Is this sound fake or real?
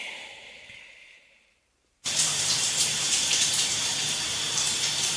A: fake